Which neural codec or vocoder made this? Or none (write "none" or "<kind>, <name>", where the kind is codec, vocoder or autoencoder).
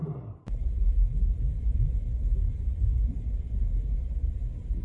none